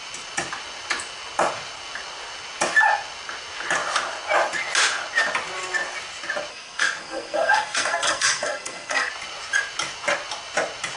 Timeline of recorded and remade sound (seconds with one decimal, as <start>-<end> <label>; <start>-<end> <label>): 0.0-6.5 recorded; 6.5-9.1 remade; 9.1-11.0 recorded